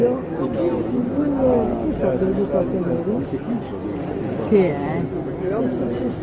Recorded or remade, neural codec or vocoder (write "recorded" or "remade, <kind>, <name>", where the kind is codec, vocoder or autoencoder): recorded